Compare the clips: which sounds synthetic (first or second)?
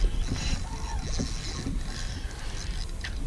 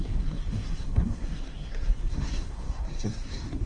second